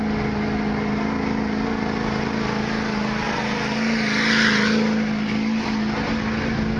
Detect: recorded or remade recorded